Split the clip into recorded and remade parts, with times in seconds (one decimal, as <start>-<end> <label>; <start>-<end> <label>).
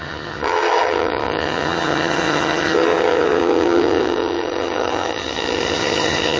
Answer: 0.0-6.4 remade